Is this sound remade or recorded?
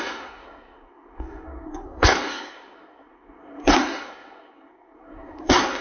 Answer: remade